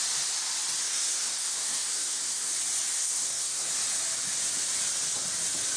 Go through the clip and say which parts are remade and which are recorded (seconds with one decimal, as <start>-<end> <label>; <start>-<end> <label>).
0.0-0.8 recorded; 0.8-2.5 remade; 2.5-2.9 recorded; 2.9-3.7 remade; 3.7-5.8 recorded